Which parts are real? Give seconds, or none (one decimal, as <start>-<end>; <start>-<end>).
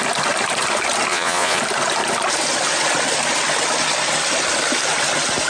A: 0.0-1.1; 1.6-5.5